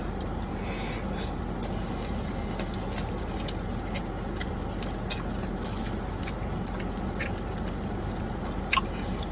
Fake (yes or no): no